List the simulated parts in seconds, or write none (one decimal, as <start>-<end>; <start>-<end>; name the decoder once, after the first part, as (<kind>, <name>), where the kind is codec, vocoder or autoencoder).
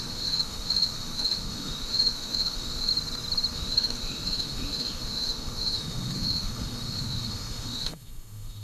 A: 0.0-2.9 (autoencoder, DAC-VAE); 3.5-8.6